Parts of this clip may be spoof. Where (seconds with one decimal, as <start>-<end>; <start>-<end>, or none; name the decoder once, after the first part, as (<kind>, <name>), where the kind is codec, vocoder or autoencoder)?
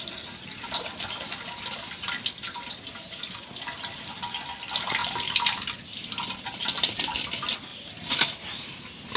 none